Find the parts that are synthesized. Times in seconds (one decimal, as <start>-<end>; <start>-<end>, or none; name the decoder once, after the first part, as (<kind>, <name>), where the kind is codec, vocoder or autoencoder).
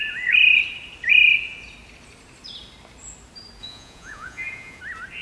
3.6-4.8 (vocoder, Vocos)